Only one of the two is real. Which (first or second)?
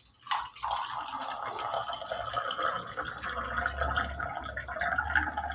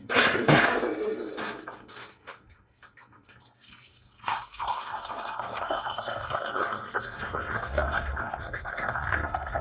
first